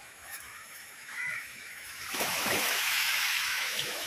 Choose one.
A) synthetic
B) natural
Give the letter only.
A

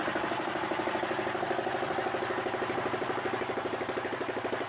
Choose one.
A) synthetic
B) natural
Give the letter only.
B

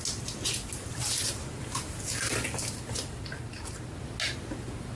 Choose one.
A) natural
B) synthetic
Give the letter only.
A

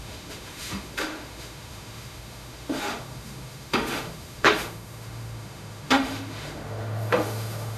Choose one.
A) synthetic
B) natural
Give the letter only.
A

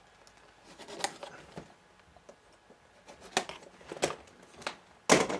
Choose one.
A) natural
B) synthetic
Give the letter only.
A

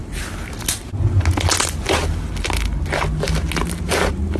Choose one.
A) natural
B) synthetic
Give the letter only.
A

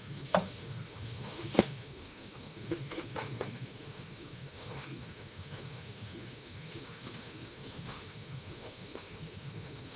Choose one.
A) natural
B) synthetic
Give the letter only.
B